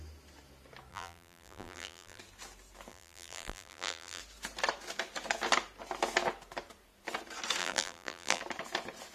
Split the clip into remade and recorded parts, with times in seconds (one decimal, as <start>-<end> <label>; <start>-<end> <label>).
0.0-0.9 recorded; 0.9-2.2 remade; 2.2-2.9 recorded; 2.9-4.2 remade; 4.2-7.6 recorded; 7.6-8.4 remade; 8.4-9.1 recorded